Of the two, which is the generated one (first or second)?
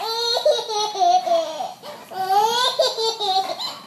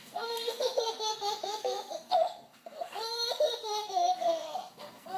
second